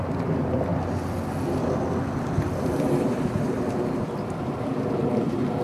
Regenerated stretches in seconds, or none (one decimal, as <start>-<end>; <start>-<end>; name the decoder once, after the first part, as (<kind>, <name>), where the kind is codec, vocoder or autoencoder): 0.0-0.7 (vocoder, BigVGAN v2); 2.8-5.6